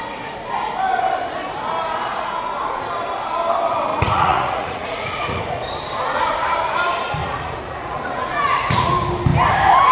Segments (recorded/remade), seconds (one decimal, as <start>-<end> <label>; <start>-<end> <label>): 0.0-2.1 recorded; 2.1-2.8 remade; 2.8-3.9 recorded; 3.9-5.4 remade; 5.4-7.2 recorded; 7.2-8.9 remade; 8.9-9.9 recorded